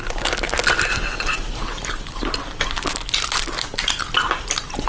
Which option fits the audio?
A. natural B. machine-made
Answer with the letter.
A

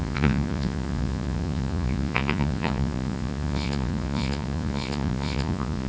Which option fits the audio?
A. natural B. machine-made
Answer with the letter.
B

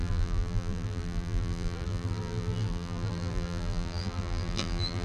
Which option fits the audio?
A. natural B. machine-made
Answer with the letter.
B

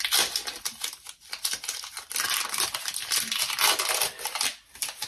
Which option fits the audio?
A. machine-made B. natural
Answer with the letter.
B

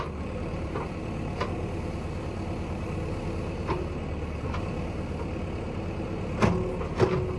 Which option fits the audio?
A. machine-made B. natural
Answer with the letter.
B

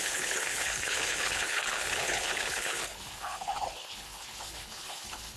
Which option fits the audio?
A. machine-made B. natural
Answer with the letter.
A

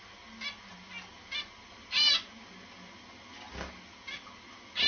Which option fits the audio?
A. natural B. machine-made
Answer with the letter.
A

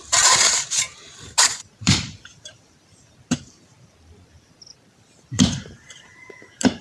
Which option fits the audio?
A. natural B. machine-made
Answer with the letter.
B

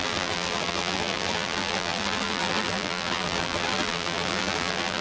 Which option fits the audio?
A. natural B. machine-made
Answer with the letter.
B